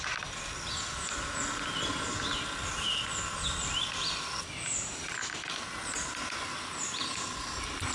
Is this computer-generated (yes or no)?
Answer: no